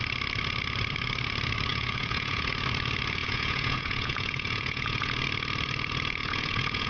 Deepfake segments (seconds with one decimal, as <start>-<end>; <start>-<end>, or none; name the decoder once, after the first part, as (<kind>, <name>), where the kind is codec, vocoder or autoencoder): 1.7-2.5 (vocoder, Vocos); 3.2-5.1; 6.2-6.9